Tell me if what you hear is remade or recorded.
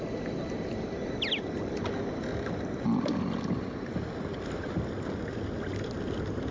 recorded